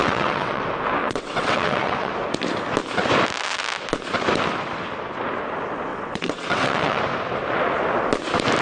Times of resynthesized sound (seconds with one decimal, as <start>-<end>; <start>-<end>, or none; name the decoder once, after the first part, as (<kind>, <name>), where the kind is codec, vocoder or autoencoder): 0.0-0.6 (vocoder, WaveNeXt); 1.0-2.1; 5.9-7.0